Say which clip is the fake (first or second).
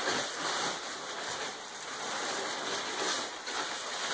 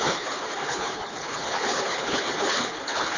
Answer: second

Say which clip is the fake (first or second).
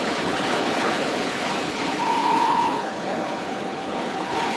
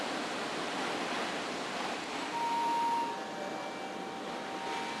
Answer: first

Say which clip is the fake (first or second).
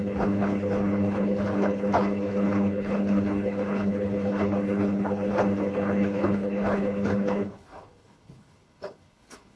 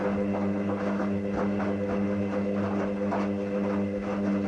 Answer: first